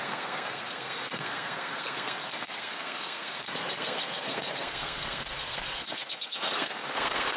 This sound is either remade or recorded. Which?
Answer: remade